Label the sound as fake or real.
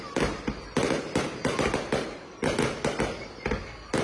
real